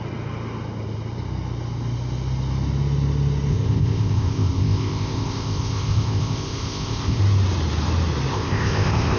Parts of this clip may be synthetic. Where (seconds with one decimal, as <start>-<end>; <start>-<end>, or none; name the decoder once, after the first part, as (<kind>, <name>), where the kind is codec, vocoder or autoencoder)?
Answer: 3.5-7.2 (codec, ZipCodec); 8.3-9.2